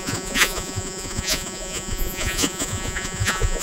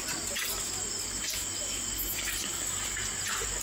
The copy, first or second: first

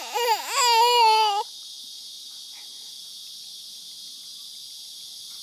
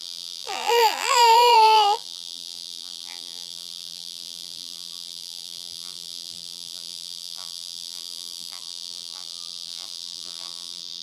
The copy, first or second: second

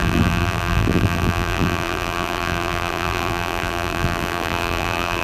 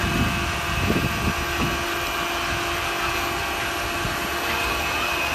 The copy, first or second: first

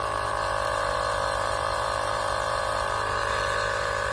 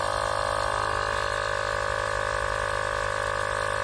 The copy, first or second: first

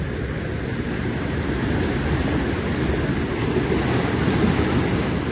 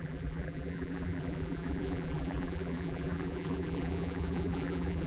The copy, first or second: second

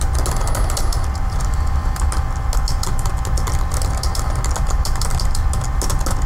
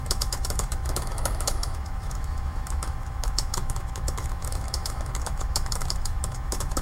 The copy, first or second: second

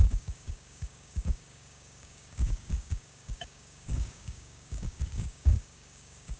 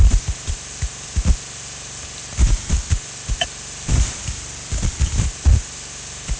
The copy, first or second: first